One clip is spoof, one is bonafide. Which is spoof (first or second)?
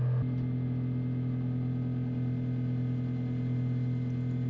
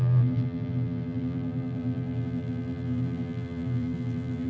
second